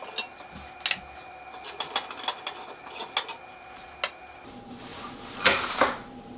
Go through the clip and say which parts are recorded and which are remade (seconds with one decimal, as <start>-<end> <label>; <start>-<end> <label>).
0.0-6.4 recorded